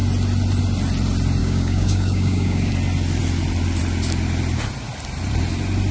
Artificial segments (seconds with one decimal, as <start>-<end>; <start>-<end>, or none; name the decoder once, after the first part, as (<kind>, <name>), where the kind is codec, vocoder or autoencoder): 1.4-2.7 (codec, DAC)

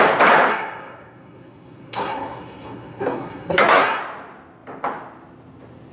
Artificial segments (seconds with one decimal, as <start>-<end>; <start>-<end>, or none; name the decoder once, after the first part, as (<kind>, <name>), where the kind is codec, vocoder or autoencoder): 0.5-4.0 (codec, SNAC)

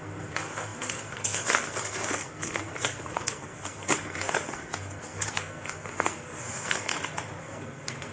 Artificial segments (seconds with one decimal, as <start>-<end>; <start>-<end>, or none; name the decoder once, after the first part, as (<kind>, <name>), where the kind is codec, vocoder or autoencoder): 0.0-6.9 (codec, SNAC); 7.4-8.1

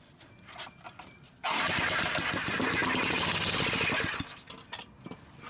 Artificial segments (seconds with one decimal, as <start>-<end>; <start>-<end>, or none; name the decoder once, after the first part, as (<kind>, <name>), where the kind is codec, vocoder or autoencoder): 0.0-2.8 (vocoder, BigVGAN v2); 4.5-5.5

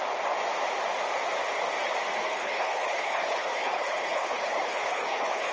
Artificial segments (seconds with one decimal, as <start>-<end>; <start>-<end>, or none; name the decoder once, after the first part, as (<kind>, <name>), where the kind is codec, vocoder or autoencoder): 2.2-5.5 (codec, HILCodec)

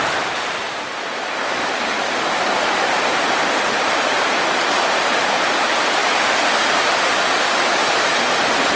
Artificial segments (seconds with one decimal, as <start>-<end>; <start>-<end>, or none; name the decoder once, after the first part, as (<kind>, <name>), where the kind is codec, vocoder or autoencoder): 0.0-6.0 (vocoder, BigVGAN v2); 6.6-8.8

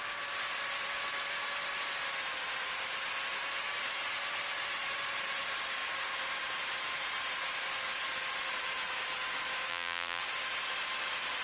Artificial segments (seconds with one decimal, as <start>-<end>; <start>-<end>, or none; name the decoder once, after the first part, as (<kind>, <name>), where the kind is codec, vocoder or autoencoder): 9.7-10.2 (vocoder, BigVGAN v2)